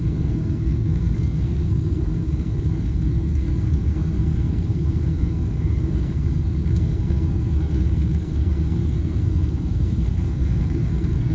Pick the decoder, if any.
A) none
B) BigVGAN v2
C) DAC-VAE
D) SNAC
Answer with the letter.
D